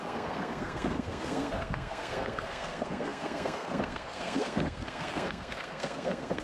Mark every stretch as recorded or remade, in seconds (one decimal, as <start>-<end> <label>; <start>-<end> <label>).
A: 0.0-6.4 remade